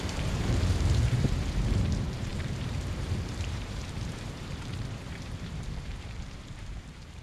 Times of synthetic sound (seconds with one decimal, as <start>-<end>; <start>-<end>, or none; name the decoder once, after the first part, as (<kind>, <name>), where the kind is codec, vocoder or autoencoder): 0.0-7.2 (vocoder, BigVGAN v2)